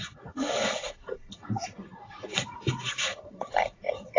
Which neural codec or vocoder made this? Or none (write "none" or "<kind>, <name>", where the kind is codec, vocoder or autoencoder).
vocoder, Vocos